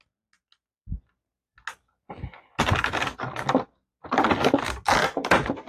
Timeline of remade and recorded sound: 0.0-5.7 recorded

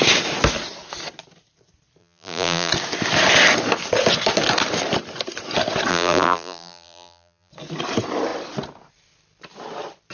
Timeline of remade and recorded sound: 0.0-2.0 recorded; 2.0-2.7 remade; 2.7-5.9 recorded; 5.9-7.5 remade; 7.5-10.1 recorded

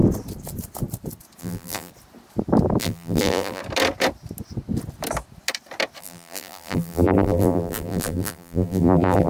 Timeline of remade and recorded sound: 0.0-1.4 recorded; 1.4-1.9 remade; 1.9-2.8 recorded; 2.8-3.6 remade; 3.6-6.0 recorded; 6.0-9.3 remade